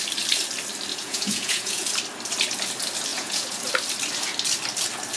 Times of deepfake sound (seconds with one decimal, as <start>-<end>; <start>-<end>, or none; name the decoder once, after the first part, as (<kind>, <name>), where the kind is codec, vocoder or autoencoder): 0.9-1.9 (vocoder, Vocos); 3.1-3.7